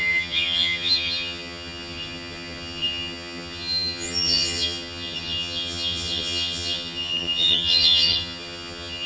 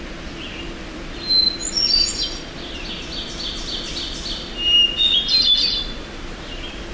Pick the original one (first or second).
second